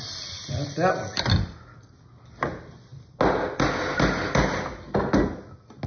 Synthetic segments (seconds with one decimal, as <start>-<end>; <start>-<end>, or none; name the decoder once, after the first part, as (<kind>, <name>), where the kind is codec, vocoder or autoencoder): none